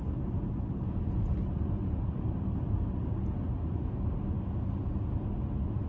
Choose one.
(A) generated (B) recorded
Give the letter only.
B